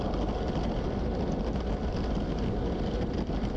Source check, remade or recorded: recorded